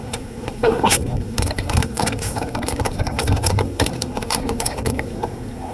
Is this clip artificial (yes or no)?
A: yes